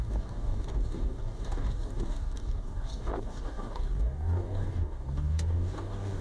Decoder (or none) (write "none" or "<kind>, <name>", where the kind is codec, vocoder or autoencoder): codec, DAC